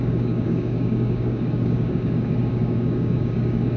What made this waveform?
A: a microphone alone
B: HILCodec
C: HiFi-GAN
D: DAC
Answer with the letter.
D